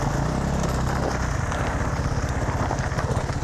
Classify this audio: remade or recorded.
recorded